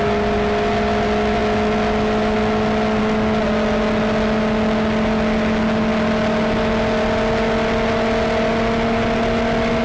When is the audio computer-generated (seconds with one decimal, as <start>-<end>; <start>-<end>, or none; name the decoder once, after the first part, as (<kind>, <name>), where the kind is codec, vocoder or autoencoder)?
none